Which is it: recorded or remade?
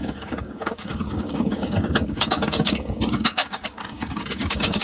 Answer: remade